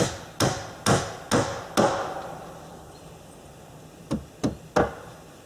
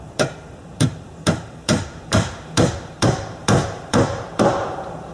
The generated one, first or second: second